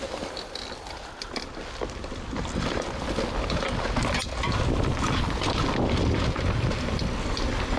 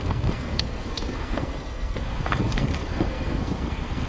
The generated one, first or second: second